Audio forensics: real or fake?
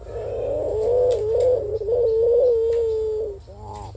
real